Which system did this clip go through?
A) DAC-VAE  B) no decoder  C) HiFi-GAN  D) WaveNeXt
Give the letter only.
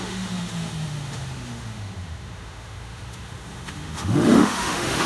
A